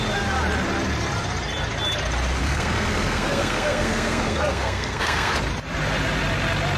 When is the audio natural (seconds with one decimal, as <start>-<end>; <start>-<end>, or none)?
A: 0.0-2.4; 5.3-6.8

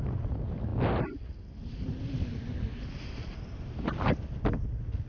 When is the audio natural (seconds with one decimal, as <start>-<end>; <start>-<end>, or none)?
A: 0.0-5.1

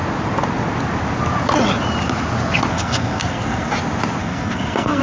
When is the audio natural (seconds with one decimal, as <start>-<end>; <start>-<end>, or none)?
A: 0.0-2.7; 3.7-4.2

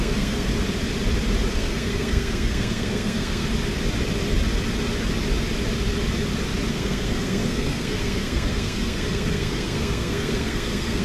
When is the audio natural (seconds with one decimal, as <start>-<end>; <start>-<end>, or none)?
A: 0.5-1.5; 3.4-6.7

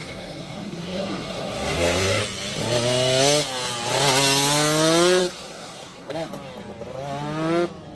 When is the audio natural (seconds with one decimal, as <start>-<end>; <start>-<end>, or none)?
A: 2.2-5.2; 6.3-7.9